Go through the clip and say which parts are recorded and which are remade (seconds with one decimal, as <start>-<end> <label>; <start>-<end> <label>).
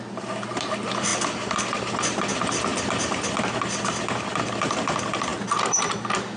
0.0-5.3 recorded; 5.3-5.9 remade; 5.9-6.4 recorded